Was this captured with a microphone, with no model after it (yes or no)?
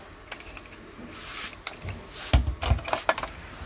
yes